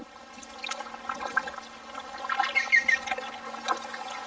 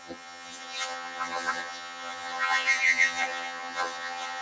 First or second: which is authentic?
first